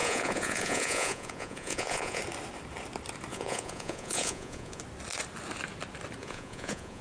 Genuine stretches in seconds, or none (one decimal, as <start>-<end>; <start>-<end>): 2.2-3.3; 4.8-6.2